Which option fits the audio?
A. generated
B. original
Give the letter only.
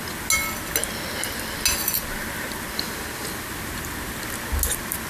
B